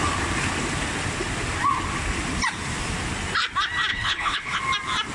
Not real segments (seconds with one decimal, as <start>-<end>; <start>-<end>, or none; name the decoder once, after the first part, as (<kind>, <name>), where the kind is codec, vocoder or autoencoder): 3.9-4.6 (codec, HILCodec)